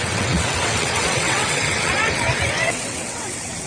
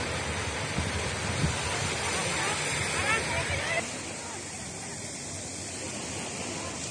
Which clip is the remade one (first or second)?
first